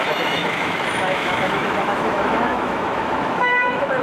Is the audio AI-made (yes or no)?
yes